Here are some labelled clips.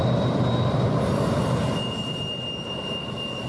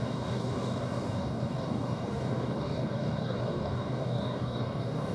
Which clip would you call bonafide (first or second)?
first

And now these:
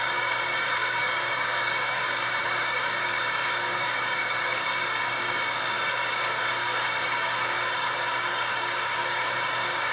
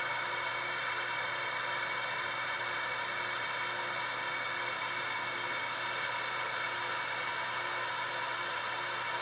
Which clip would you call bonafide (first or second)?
second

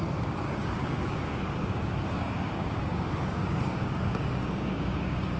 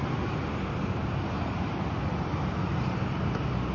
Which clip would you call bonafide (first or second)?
second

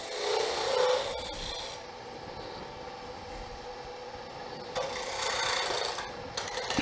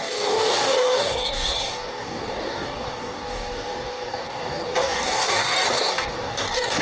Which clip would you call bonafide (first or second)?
first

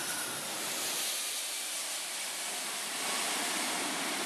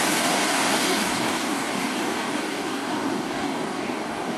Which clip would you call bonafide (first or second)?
first